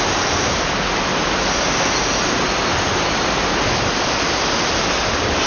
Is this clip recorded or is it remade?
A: recorded